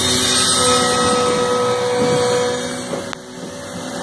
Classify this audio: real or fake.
real